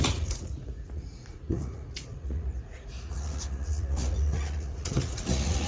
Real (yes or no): no